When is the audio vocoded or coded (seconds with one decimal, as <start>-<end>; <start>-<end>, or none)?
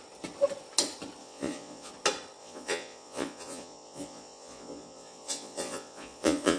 1.2-1.9; 2.4-6.6